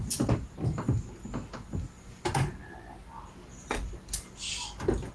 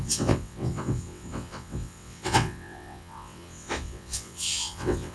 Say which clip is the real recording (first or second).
first